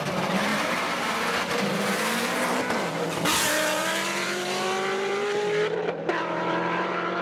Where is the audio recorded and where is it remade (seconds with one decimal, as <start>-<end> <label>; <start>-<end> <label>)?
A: 0.0-7.2 remade